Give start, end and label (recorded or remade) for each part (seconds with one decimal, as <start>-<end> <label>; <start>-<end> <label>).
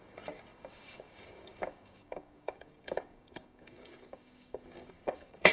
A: 0.0-5.5 remade